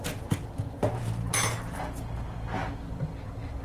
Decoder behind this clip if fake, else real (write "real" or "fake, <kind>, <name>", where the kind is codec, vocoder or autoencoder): real